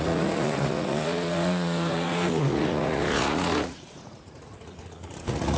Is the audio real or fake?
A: fake